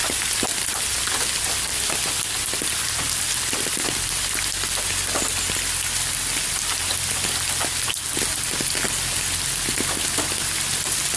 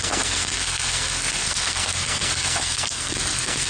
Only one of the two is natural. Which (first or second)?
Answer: first